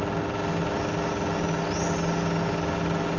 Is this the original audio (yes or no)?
yes